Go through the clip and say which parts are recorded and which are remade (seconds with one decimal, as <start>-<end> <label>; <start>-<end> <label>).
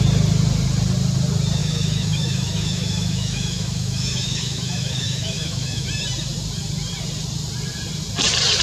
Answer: 0.0-1.6 recorded; 1.6-5.9 remade; 5.9-8.6 recorded